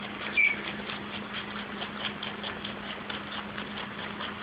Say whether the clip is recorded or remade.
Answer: remade